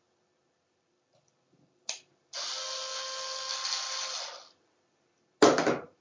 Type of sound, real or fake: real